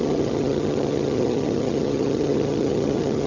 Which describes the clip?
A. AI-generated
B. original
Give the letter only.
A